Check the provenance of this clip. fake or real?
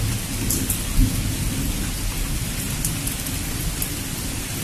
real